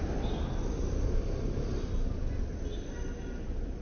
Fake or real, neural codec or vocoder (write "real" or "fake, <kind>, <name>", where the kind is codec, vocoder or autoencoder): real